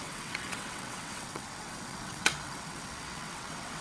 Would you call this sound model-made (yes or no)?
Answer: yes